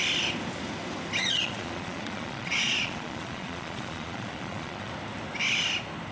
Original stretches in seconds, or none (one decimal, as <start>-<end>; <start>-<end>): 0.0-1.2; 4.9-6.1